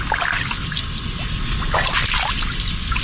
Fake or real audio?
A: real